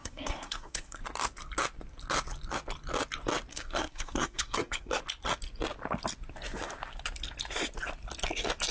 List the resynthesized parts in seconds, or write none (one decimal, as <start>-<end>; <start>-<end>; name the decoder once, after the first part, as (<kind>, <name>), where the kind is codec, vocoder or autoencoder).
0.0-1.0 (codec, SNAC); 3.5-5.0